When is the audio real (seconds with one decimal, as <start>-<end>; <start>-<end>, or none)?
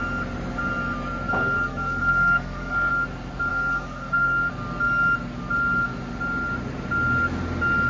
0.0-1.4; 2.9-3.5; 4.5-7.9